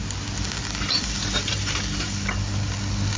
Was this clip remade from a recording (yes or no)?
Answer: no